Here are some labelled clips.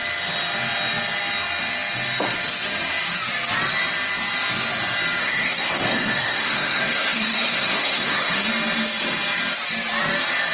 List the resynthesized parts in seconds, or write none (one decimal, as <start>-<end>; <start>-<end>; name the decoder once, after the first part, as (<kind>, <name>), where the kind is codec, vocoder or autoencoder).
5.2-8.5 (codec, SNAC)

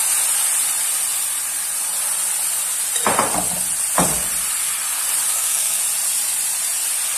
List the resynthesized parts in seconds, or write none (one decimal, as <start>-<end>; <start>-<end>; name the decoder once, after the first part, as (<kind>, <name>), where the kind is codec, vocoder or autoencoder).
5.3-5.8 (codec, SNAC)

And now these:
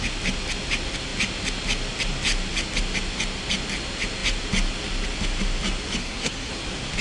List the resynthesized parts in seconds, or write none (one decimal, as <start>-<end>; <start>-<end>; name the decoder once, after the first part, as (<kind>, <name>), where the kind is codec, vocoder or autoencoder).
6.0-6.5 (codec, SNAC)

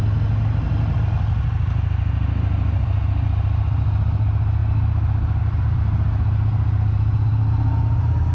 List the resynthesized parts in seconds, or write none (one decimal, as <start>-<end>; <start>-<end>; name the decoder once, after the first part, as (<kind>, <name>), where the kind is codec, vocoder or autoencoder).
none

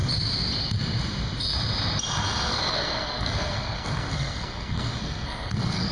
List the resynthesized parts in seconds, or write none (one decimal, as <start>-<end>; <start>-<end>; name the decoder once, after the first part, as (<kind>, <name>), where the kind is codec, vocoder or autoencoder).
2.5-5.9 (codec, SNAC)

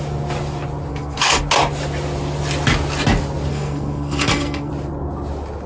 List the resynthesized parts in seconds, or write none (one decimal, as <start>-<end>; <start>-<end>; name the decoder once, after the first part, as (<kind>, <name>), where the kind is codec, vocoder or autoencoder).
0.9-1.4 (codec, SNAC); 3.5-4.7

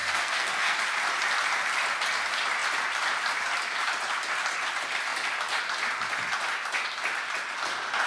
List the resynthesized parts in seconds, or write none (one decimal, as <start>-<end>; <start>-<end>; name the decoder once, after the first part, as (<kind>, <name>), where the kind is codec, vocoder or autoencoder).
0.0-0.8 (codec, SNAC)

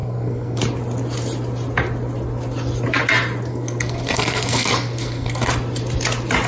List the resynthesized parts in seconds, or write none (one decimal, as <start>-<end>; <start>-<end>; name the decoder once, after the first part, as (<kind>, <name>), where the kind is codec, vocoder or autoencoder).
0.0-0.6 (codec, SNAC); 3.5-5.5